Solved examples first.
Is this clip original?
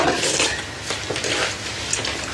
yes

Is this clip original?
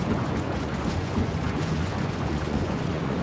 no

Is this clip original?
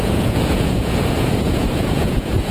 no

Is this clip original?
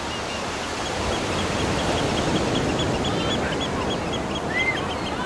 yes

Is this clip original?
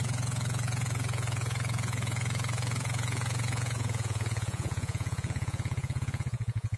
no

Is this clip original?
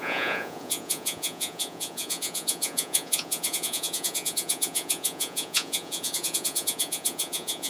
no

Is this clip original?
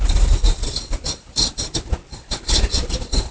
yes